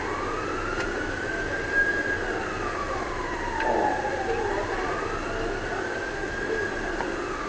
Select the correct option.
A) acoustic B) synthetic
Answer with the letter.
A